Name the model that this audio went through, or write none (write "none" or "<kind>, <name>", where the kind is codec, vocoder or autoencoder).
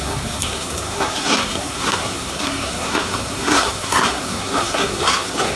codec, SNAC